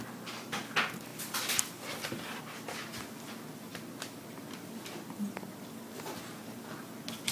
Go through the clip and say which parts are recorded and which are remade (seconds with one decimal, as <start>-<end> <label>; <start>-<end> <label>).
0.0-1.1 recorded; 1.1-2.4 remade; 2.4-3.7 recorded; 3.7-6.6 remade; 6.6-7.3 recorded